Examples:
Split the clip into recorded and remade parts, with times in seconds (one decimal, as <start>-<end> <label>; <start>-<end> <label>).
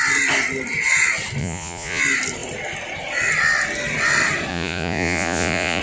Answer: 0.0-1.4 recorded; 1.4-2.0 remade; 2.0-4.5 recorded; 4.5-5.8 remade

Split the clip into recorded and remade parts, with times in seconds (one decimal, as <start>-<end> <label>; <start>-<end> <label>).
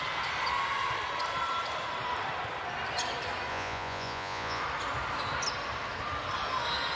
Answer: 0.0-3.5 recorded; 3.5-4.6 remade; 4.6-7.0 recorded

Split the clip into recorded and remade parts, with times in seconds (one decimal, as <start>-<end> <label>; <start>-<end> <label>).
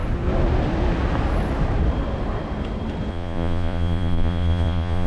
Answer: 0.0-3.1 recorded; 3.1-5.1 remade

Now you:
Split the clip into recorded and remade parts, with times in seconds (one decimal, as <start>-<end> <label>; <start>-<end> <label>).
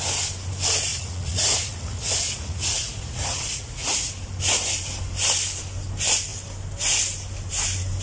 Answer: 0.0-0.9 recorded; 0.9-4.1 remade; 4.1-8.0 recorded